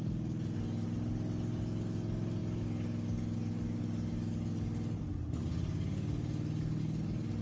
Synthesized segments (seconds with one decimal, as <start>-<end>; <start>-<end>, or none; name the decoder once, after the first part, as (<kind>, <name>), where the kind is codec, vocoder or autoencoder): none